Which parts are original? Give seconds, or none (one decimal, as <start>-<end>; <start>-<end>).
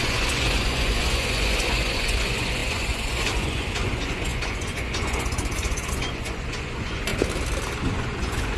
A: 7.1-7.8